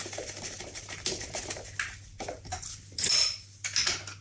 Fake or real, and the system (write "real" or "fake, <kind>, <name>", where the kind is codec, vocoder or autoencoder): real